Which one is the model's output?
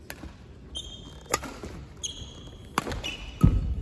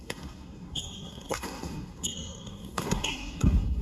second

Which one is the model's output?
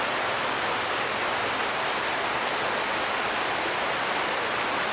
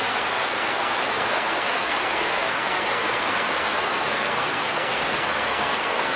second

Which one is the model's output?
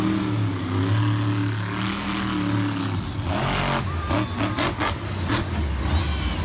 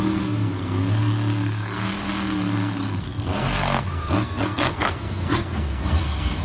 second